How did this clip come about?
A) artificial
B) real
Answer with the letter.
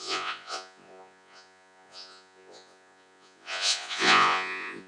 A